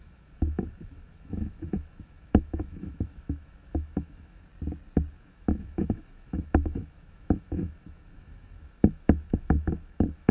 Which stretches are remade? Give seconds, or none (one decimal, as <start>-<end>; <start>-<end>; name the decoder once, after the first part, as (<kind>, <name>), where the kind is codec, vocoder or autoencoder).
0.0-4.5 (autoencoder, DAC-VAE); 5.1-10.3